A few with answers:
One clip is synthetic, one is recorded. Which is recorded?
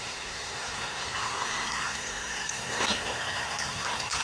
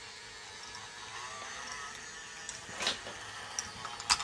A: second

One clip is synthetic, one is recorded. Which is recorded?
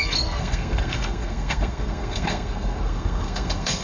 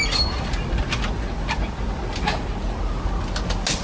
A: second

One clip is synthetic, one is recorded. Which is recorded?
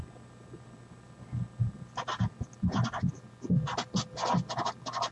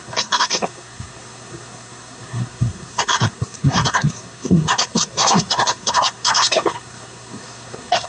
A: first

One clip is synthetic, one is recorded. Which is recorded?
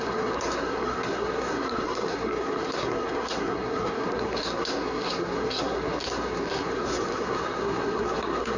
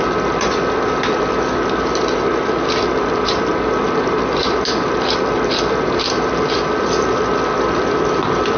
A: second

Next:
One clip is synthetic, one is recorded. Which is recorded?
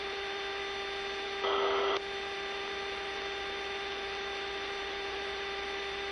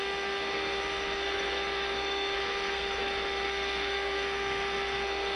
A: first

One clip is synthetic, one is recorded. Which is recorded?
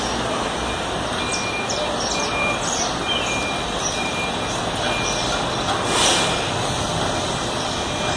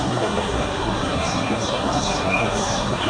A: first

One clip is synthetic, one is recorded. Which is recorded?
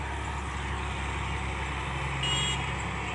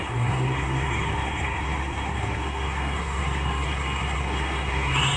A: first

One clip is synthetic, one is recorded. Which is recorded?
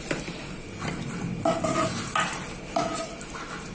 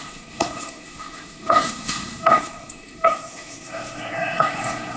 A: first